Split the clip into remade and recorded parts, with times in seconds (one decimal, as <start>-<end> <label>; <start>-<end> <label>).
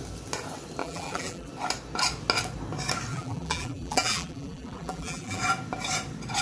0.0-0.8 recorded; 0.8-1.5 remade; 1.5-3.1 recorded; 3.1-5.4 remade; 5.4-6.4 recorded